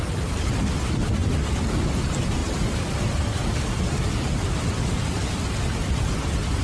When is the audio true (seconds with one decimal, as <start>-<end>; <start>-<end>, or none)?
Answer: 0.0-6.6